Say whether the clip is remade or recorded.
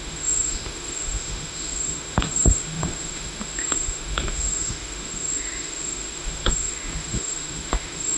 remade